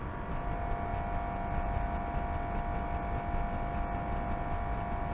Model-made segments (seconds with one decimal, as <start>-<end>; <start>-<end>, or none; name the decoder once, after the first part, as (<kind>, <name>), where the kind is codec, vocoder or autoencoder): none

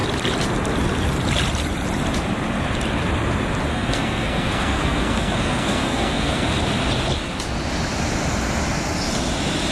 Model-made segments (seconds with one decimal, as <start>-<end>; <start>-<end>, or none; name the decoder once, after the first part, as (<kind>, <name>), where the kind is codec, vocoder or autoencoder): 3.7-6.5 (codec, SNAC)